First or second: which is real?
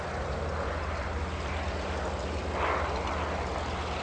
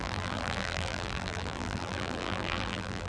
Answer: first